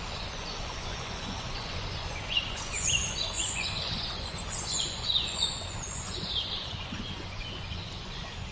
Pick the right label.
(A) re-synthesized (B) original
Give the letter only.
A